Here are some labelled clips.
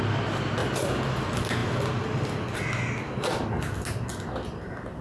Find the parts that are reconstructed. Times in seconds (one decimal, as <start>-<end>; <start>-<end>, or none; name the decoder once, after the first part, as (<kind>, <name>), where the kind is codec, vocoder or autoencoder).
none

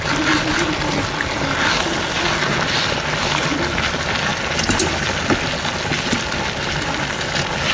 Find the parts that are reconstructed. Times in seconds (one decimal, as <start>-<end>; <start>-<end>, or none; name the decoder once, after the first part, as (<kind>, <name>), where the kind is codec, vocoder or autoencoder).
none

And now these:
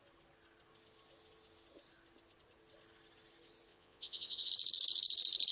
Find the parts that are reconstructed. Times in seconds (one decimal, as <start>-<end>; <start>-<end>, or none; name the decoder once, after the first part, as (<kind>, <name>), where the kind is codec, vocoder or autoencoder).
3.7-4.5 (vocoder, Vocos)

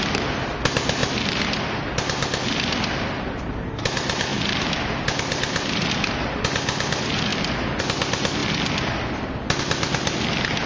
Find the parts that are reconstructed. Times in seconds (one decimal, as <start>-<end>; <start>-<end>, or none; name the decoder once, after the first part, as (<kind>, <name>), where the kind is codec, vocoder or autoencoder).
none

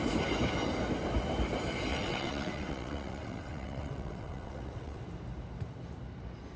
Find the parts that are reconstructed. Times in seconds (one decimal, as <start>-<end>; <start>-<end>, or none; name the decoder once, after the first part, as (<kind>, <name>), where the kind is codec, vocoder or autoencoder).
1.9-5.0 (vocoder, WaveNeXt)